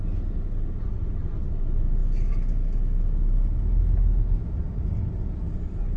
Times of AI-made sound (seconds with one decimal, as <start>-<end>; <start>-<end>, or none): none

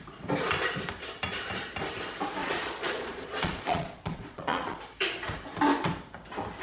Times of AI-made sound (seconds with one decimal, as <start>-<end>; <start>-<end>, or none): 2.4-4.8

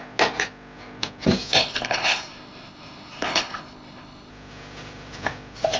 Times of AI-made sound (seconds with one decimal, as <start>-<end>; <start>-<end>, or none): 1.6-4.3

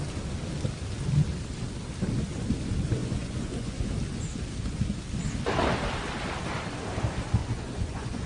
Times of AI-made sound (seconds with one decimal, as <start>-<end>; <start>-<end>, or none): 3.0-3.9; 7.4-8.3

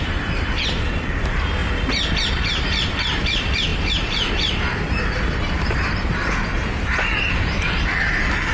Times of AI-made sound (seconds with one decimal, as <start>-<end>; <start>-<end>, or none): 0.0-1.6; 2.1-8.5

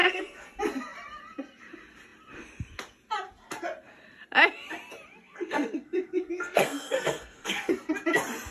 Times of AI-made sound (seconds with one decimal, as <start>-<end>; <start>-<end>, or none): 0.0-0.6; 5.1-7.7

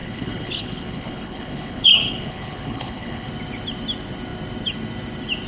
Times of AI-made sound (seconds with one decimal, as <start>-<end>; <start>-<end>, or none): 0.0-3.3

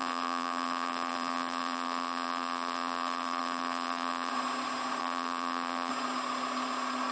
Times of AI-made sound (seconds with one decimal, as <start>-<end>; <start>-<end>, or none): 0.0-4.3; 5.0-5.9